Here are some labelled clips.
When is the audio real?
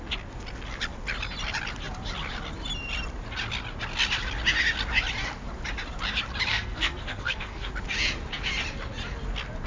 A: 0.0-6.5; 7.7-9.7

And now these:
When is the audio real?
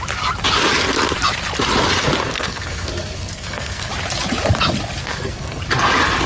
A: 0.0-2.2; 3.9-5.0; 5.6-6.3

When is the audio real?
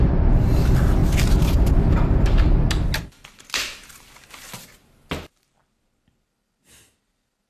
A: 0.0-7.5